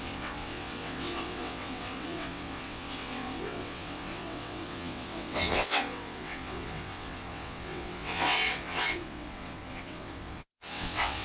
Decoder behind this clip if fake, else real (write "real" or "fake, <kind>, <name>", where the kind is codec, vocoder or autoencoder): fake, vocoder, WaveNeXt